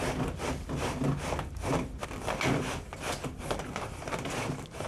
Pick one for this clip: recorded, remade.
recorded